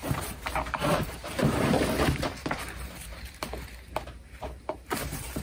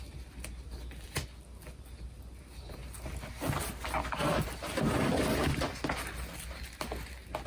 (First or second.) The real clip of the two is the second